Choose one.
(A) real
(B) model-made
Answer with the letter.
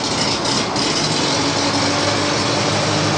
A